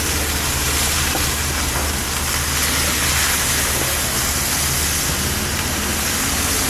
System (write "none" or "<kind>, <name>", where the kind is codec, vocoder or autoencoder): none